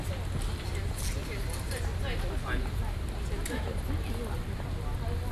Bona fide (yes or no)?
yes